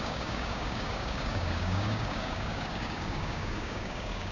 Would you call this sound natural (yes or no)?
no